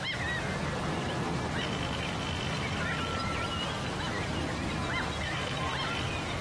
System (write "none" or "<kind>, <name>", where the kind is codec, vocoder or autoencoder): none